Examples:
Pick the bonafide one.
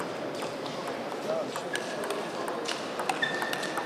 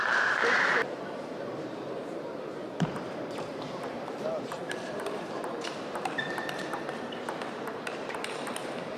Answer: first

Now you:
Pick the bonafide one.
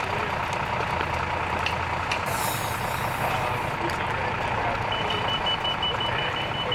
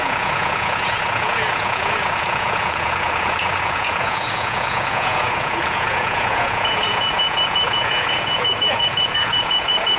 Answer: first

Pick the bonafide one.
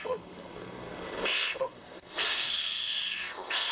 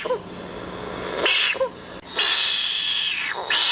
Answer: second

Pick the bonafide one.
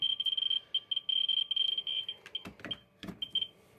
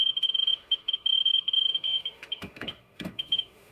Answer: first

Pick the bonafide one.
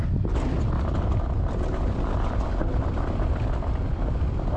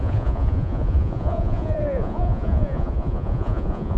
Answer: first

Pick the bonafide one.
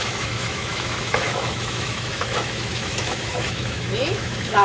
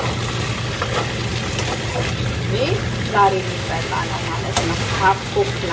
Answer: second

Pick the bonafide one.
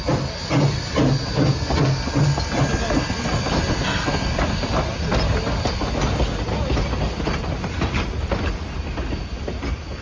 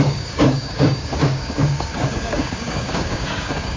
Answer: first